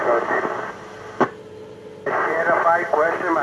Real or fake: real